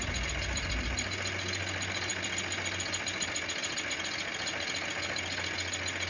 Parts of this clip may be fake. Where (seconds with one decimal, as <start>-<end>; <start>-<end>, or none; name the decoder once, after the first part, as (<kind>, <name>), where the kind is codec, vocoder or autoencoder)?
none